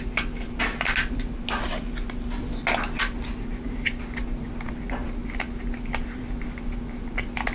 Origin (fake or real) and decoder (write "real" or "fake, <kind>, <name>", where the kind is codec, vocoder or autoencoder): real